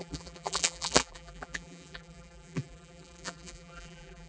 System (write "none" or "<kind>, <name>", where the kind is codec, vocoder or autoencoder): vocoder, BigVGAN v2